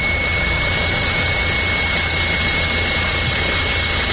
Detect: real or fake real